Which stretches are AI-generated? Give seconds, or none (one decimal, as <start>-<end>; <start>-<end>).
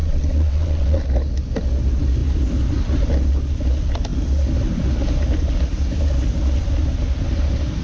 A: 0.0-1.0